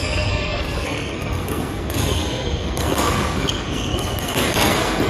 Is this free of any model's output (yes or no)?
no